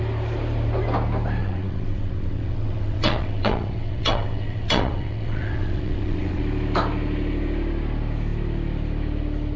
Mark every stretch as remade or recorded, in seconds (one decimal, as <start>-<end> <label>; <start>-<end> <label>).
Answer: 0.0-1.4 recorded; 1.4-6.4 remade; 6.4-9.6 recorded